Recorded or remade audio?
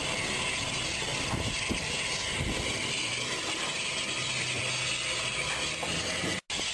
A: recorded